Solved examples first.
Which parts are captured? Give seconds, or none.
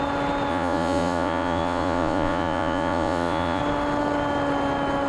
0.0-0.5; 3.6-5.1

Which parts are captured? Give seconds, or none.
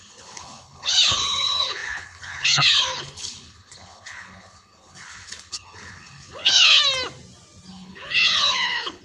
6.8-7.7